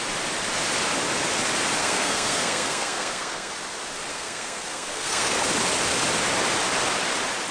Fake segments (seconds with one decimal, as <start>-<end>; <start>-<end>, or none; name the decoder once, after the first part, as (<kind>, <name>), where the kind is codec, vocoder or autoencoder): 1.8-3.5 (codec, SNAC); 4.1-5.3